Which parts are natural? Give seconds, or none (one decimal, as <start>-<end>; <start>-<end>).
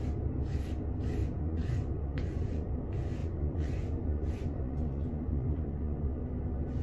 0.0-1.2; 2.7-3.2; 6.2-6.8